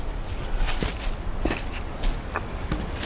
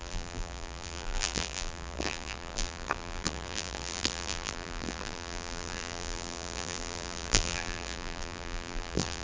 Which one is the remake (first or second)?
second